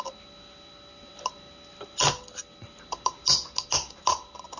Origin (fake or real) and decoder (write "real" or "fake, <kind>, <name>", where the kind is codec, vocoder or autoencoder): real